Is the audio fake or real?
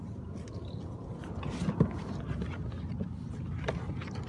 real